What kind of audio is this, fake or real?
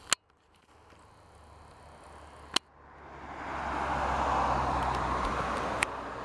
real